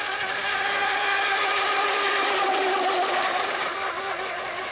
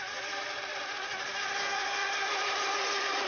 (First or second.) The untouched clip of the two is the second